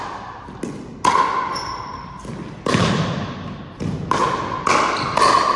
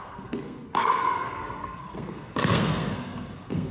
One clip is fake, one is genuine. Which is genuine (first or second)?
first